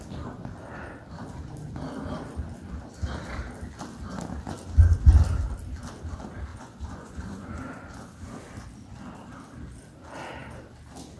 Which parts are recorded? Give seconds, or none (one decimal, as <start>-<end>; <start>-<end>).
0.0-6.5; 7.9-11.2